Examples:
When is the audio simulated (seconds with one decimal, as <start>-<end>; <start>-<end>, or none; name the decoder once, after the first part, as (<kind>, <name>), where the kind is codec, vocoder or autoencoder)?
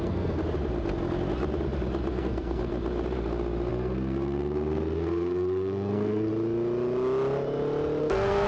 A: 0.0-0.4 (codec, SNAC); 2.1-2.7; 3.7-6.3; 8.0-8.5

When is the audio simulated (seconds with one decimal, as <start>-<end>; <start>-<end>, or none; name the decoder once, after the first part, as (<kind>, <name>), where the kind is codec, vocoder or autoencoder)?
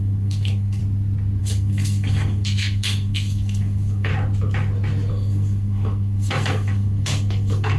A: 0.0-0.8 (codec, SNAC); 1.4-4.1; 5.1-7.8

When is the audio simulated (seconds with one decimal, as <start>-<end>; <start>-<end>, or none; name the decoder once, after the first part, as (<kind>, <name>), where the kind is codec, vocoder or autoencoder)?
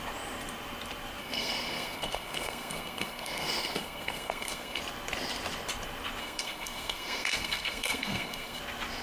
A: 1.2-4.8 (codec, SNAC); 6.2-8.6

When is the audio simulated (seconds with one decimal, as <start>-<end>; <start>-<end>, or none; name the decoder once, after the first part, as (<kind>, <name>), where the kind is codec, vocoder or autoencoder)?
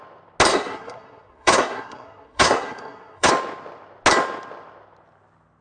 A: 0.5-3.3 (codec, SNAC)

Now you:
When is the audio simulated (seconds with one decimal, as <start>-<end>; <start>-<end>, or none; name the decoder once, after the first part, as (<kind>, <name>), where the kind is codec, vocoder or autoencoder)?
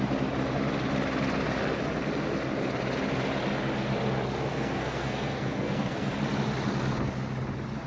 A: 4.5-6.1 (codec, SNAC)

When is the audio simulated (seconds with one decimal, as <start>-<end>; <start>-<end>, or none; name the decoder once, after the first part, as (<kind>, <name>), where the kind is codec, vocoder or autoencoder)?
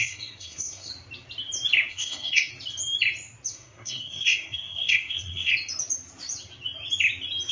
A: 0.0-0.9 (codec, SNAC); 1.9-2.5; 3.5-5.5